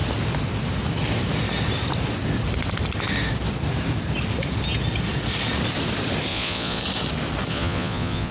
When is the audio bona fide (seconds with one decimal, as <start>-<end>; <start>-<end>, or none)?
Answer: 0.0-6.3; 6.8-7.5

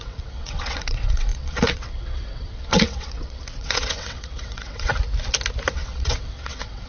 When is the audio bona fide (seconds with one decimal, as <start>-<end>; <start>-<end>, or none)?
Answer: 4.9-5.7

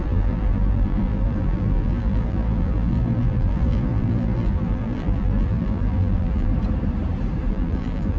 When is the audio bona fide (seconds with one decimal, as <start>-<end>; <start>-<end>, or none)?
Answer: 6.5-7.5

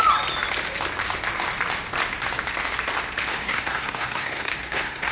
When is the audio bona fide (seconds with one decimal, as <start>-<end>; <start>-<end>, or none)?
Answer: 0.0-3.3